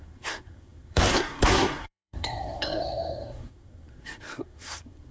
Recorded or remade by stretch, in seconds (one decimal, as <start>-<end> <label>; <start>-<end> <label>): 0.0-5.1 remade